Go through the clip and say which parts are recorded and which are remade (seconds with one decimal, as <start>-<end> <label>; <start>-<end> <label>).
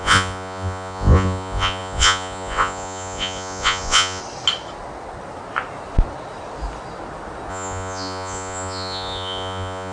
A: 0.0-4.2 remade; 4.2-7.5 recorded; 7.5-9.9 remade